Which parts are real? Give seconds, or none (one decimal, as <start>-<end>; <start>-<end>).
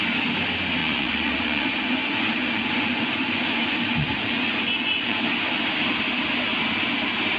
0.0-0.8; 5.2-7.4